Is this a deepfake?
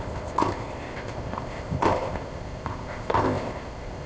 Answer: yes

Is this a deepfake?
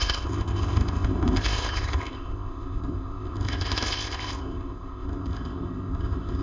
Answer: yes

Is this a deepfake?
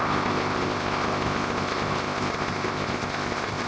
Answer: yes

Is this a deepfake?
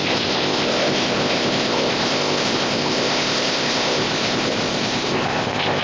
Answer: yes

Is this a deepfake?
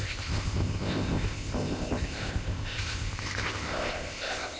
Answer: yes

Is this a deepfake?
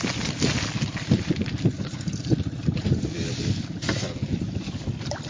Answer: no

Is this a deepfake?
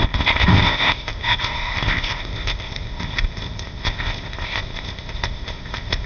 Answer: yes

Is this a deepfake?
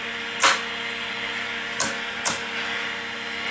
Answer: no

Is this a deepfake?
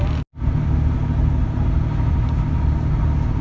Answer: no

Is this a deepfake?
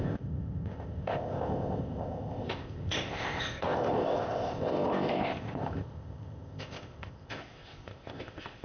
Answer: yes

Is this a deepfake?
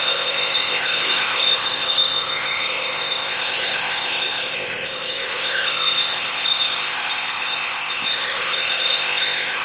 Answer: yes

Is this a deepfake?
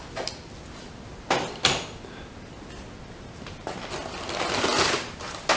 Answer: no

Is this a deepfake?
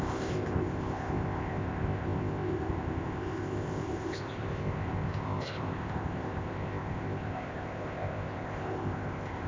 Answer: yes